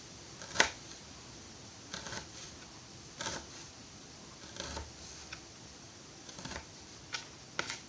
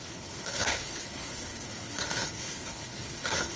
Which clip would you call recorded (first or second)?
first